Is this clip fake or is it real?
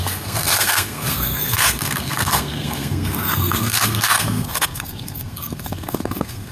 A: fake